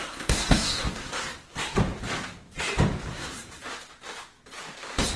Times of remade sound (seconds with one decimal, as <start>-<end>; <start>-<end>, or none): 0.0-1.8; 3.1-3.6